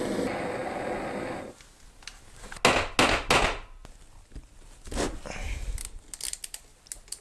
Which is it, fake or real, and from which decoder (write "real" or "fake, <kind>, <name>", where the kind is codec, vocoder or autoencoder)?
real